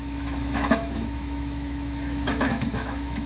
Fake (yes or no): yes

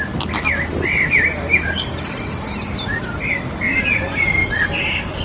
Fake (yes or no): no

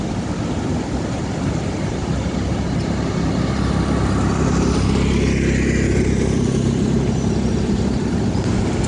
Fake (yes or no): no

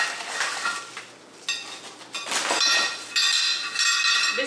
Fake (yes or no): no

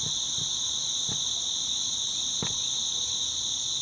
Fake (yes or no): no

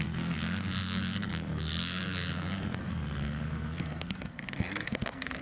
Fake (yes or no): yes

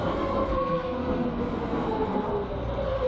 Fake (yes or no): yes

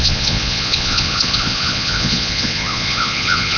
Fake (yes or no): yes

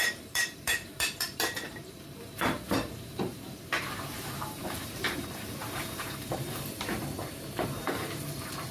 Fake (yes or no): yes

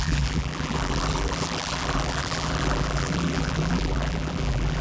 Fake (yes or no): yes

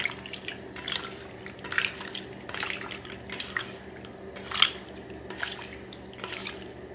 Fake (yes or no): no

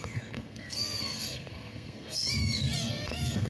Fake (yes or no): yes